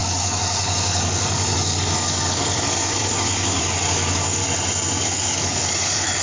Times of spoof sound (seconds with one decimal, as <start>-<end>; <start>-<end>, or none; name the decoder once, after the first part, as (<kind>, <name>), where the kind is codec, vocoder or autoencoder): 0.0-4.4 (codec, DAC); 5.0-6.2